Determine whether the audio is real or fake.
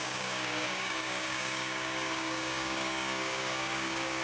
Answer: fake